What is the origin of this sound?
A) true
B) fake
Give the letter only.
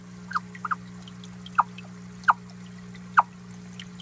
A